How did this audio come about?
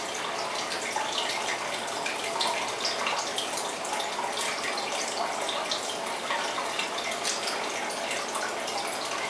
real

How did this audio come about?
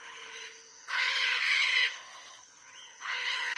fake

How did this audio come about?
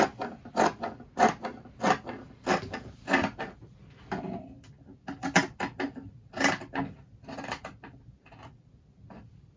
real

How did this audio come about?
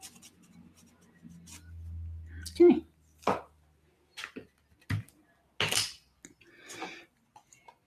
real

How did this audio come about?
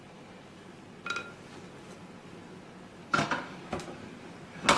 real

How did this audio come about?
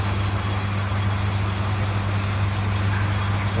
real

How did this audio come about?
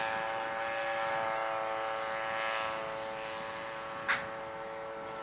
real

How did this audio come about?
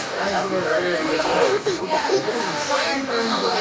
fake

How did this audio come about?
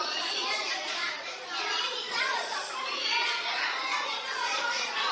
fake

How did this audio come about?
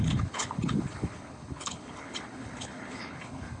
fake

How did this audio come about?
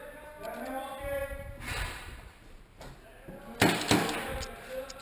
real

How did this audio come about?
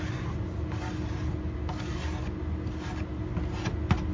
real